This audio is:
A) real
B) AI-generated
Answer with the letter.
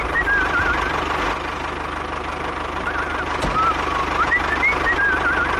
A